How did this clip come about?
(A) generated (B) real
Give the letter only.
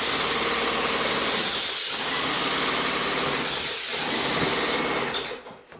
B